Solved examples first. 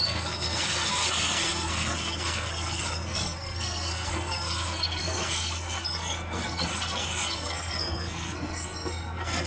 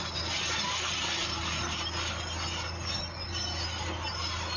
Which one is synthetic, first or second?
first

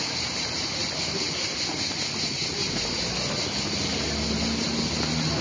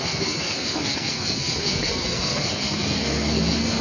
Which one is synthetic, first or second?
second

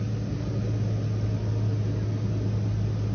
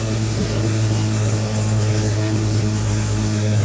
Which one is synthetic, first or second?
second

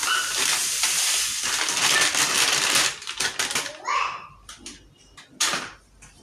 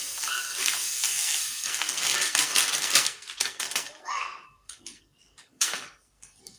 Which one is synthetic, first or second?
second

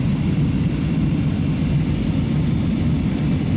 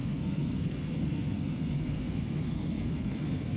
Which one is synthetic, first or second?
second